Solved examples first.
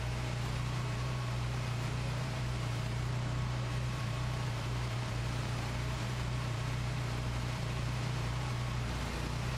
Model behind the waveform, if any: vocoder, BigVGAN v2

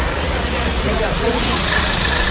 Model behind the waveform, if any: vocoder, Vocos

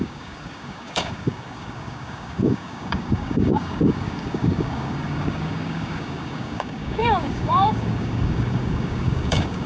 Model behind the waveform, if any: codec, DAC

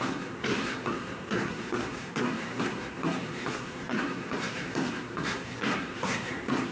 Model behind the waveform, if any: codec, SNAC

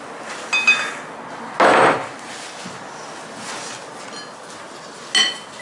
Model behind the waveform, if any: none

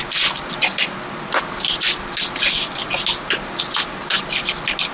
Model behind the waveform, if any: none